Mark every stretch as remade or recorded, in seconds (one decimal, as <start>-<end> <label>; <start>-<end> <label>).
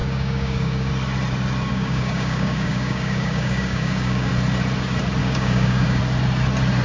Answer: 0.0-0.9 remade; 0.9-1.7 recorded; 1.7-4.3 remade; 4.3-5.2 recorded; 5.2-6.0 remade; 6.0-6.8 recorded